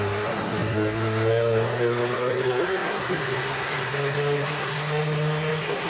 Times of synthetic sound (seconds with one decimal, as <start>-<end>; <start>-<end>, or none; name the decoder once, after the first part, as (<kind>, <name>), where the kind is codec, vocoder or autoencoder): 0.0-5.9 (codec, SNAC)